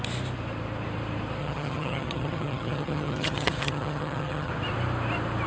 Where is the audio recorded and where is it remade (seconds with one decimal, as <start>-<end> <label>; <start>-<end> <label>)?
0.0-1.4 recorded; 1.4-4.5 remade; 4.5-5.5 recorded